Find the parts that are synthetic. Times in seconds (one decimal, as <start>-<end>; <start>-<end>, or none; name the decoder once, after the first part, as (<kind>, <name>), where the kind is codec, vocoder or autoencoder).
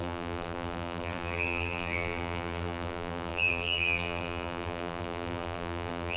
0.0-6.2 (vocoder, BigVGAN v2)